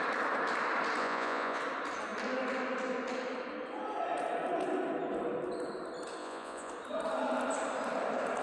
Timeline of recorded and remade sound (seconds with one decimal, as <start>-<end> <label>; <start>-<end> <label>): 0.0-1.0 recorded; 1.0-1.6 remade; 1.6-6.2 recorded; 6.2-6.7 remade; 6.7-8.4 recorded